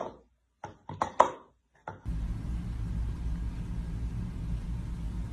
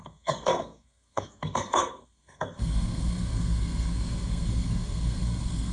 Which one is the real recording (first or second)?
first